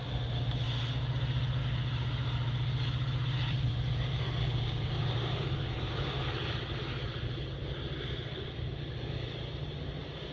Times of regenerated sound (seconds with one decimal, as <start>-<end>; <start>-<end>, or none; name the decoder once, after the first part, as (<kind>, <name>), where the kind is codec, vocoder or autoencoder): 4.1-6.2 (codec, DAC)